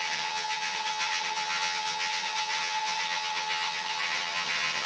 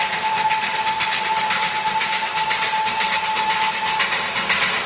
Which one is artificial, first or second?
first